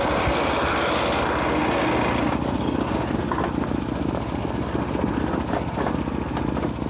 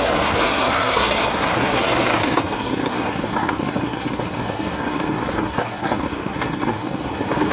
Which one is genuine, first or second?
first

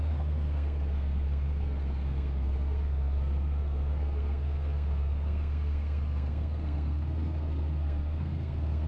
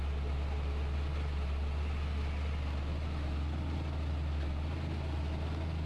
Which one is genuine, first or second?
second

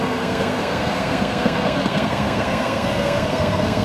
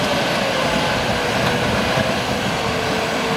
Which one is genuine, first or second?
second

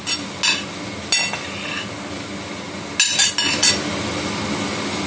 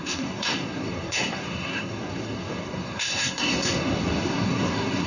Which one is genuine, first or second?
first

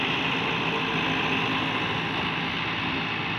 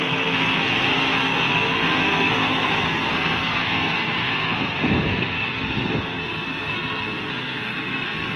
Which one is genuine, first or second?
first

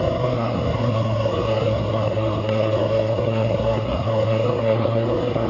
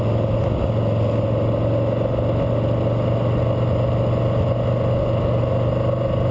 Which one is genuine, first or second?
second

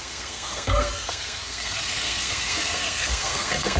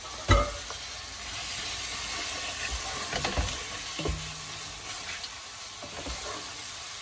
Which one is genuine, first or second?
second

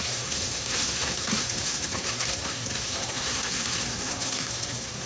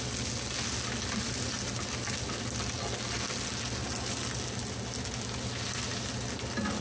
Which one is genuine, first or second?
second